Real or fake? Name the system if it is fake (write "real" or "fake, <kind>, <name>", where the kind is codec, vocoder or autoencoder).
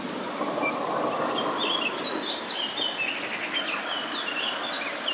real